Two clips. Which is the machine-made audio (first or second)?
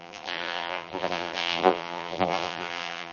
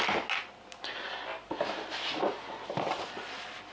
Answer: first